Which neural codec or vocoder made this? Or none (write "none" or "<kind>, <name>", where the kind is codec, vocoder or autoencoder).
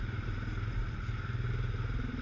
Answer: none